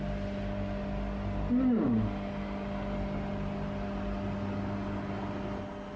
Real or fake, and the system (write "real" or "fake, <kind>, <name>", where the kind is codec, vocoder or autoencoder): real